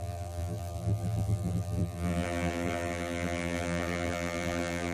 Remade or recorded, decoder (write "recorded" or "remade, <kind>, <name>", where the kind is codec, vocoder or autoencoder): remade, vocoder, BigVGAN v2